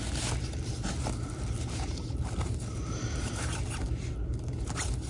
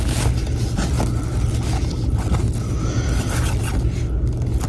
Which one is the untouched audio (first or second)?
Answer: second